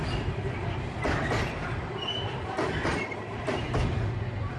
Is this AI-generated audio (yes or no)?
no